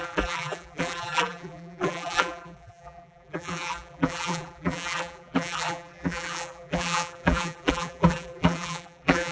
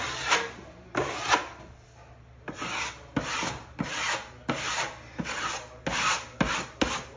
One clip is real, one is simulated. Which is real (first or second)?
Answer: second